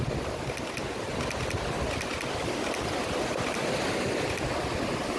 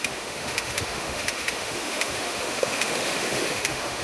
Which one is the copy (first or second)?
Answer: second